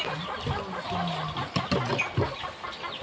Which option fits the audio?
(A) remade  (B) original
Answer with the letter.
B